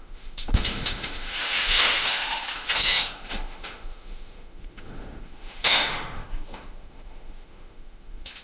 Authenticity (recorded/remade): remade